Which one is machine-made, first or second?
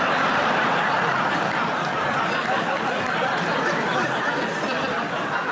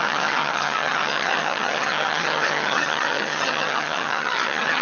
second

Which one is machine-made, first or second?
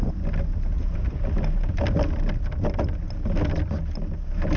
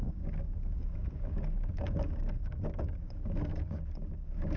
second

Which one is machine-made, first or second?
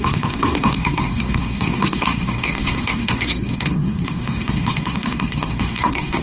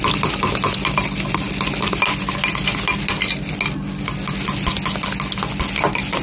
first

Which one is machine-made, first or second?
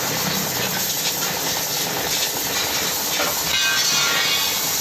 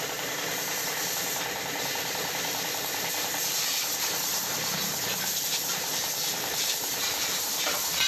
second